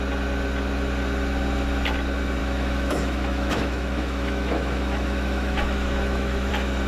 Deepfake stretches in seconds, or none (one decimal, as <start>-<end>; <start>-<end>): 2.4-6.5